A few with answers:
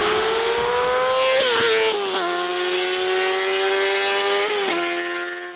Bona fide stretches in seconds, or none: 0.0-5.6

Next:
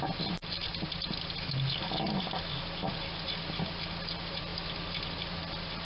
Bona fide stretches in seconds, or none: 0.7-3.4; 4.5-5.1